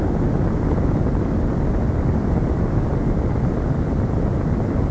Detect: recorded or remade recorded